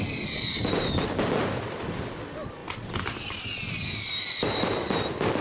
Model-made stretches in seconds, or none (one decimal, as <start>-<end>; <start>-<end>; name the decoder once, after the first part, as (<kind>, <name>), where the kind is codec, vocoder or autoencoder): none